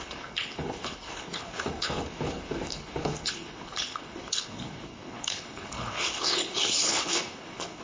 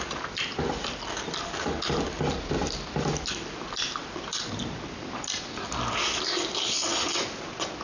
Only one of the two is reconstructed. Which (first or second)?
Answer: first